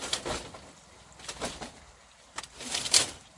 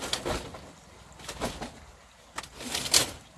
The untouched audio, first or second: second